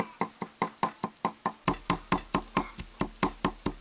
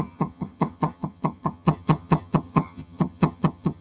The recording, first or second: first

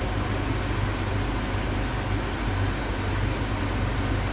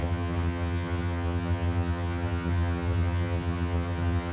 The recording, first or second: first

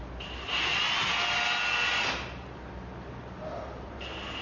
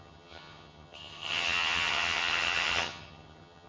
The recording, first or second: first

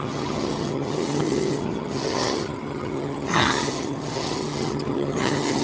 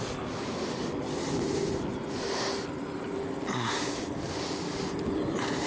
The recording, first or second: second